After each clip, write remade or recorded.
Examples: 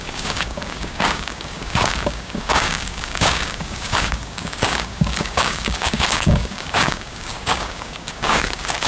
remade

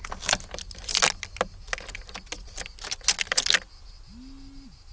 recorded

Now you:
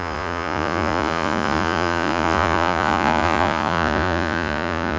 remade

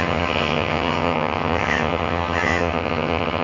remade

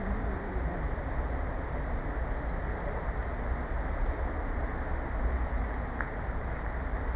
recorded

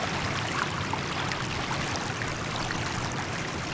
recorded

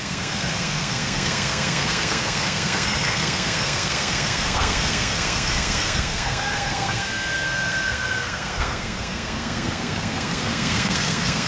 remade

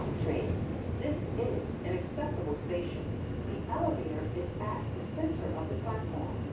recorded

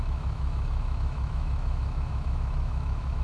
remade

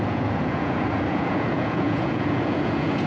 remade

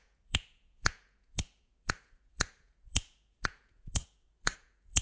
remade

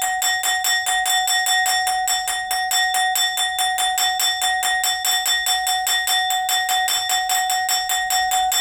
recorded